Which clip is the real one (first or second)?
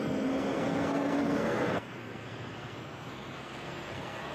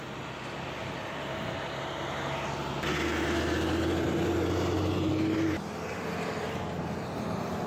second